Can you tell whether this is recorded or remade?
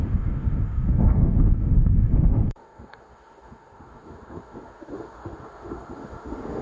remade